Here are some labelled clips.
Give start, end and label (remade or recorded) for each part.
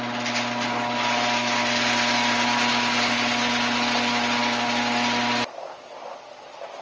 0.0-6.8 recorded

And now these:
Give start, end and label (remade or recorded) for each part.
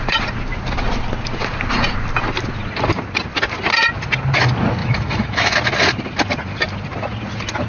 0.0-4.8 recorded; 4.8-5.5 remade; 5.5-7.7 recorded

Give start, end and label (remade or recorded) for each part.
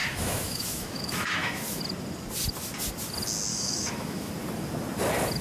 0.0-1.8 remade; 1.8-3.5 recorded; 3.5-4.3 remade; 4.3-5.4 recorded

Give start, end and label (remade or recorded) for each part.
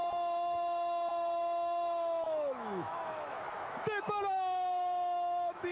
0.0-5.7 remade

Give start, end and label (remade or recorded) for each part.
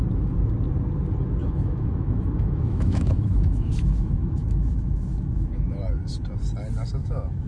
0.0-1.4 recorded; 1.4-5.8 remade; 5.8-7.0 recorded; 7.0-7.5 remade